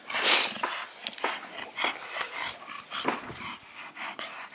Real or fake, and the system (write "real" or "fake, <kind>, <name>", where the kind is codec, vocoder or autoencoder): real